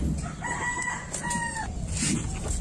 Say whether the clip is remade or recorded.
recorded